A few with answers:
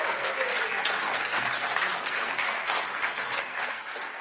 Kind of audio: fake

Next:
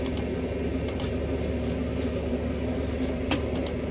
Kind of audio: real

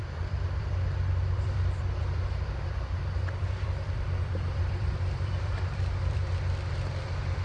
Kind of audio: fake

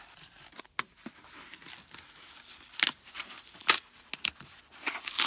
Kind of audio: real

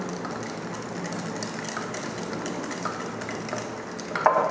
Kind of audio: real